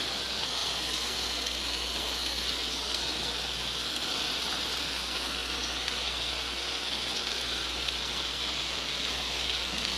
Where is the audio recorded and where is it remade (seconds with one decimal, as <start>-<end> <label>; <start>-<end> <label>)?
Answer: 0.0-4.3 remade; 4.3-4.8 recorded; 4.8-10.0 remade